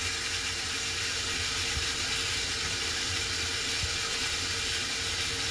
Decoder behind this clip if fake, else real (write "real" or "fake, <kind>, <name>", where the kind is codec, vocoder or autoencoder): real